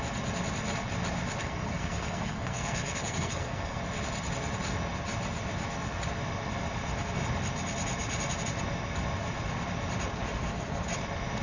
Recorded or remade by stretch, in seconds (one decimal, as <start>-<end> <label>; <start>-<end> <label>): 0.0-1.4 recorded; 1.4-3.8 remade; 3.8-11.4 recorded